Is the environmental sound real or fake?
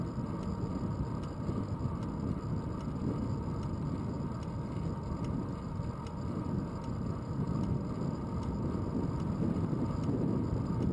real